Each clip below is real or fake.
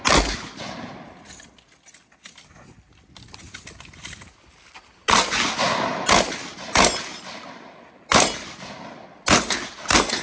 real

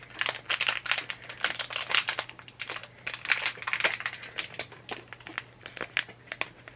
real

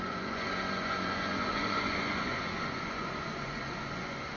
fake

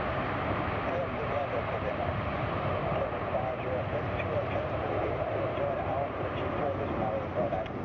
fake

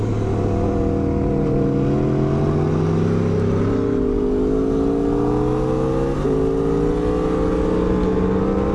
real